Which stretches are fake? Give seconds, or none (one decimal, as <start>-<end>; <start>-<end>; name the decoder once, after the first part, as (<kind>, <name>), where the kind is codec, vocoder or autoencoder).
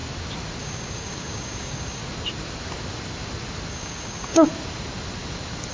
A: 0.6-2.0 (codec, DAC); 3.7-4.5